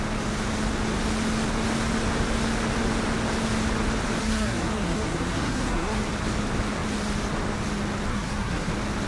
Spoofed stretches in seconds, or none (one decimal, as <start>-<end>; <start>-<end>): 4.2-6.0; 8.1-8.7